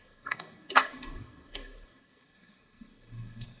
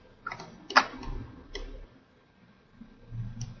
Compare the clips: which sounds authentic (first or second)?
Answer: second